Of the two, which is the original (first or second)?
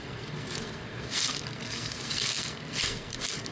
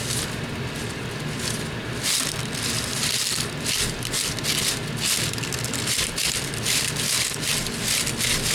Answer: second